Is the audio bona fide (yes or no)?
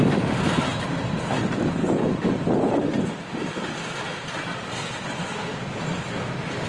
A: yes